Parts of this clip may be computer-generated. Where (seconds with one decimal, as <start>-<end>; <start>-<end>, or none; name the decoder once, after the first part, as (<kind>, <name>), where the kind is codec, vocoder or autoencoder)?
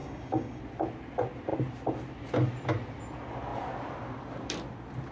0.0-0.6 (codec, DAC)